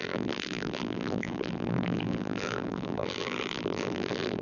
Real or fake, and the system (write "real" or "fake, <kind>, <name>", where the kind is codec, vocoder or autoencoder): fake, vocoder, BigVGAN v2